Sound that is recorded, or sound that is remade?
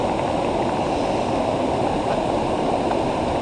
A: recorded